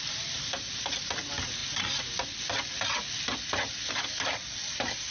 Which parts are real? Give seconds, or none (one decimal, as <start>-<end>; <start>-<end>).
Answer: 0.0-5.1